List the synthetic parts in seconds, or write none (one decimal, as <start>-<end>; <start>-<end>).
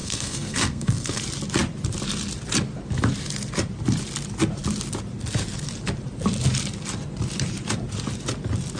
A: 0.0-1.2